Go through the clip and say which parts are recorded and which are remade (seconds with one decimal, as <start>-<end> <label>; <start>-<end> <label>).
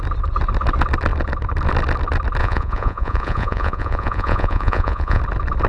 0.0-2.4 recorded; 2.4-5.2 remade; 5.2-5.7 recorded